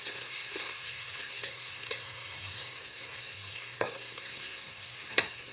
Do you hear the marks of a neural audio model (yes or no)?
yes